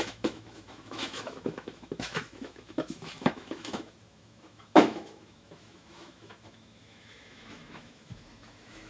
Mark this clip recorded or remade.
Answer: remade